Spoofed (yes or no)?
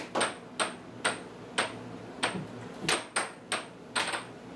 no